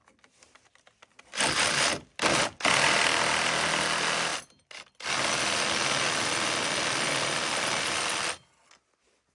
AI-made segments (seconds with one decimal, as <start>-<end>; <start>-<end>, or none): none